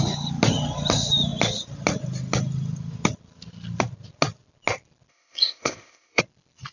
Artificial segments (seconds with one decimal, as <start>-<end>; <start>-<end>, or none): 5.1-6.2